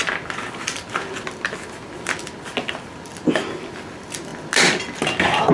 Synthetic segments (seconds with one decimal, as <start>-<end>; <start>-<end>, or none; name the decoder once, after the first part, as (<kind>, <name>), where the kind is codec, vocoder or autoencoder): none